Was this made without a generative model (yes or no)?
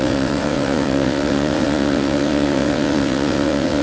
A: no